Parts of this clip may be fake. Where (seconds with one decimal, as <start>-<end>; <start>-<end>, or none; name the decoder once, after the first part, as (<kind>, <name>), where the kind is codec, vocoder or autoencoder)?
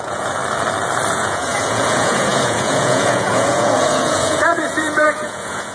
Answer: 0.0-0.4 (vocoder, Vocos); 1.1-5.7